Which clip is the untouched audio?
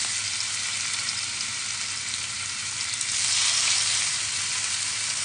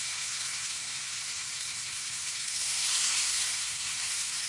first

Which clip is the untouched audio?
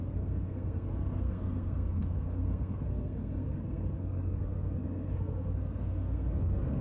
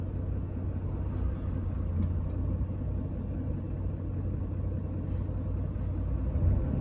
second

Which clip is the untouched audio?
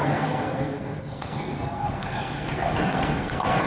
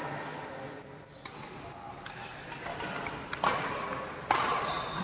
second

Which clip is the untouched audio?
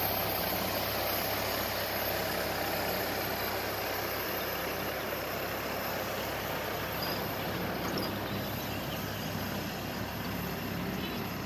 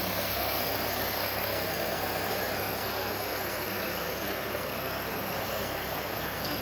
first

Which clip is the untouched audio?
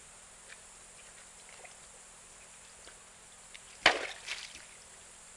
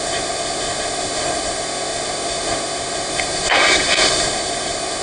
first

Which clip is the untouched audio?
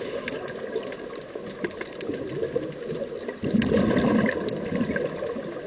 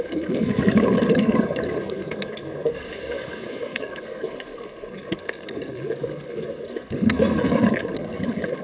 first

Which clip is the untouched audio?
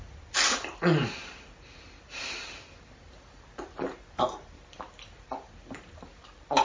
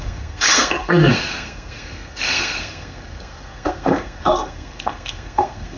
first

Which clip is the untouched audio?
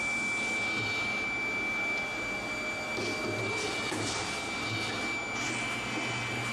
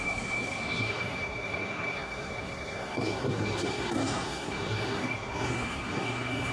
first